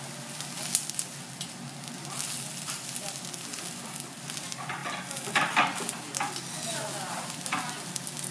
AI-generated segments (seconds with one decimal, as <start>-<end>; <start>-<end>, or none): none